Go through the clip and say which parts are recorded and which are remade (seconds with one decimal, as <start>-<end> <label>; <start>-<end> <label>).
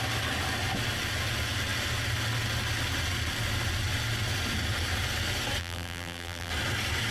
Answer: 0.0-5.6 recorded; 5.6-6.5 remade; 6.5-7.1 recorded